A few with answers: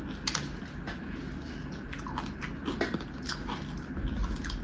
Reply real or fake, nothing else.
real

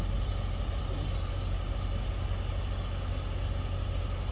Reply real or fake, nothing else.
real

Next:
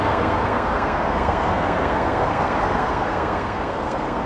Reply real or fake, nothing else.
fake